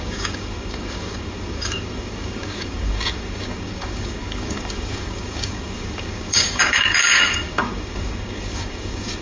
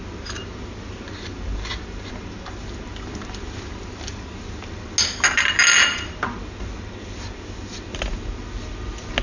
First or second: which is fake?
first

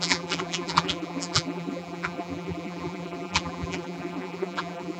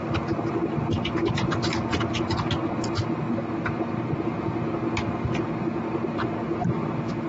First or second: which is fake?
first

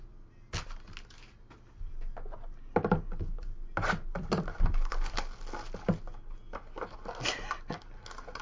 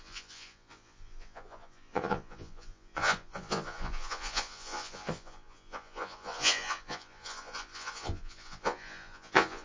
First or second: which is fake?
second